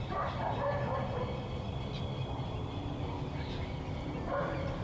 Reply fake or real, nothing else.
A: real